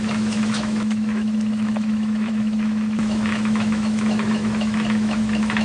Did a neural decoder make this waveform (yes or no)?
yes